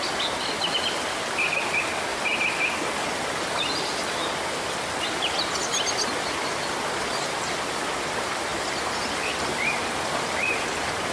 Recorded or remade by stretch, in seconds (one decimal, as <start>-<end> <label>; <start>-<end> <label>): 0.0-11.1 recorded